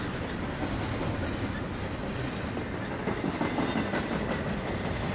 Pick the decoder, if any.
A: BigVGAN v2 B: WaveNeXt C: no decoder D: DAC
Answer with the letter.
C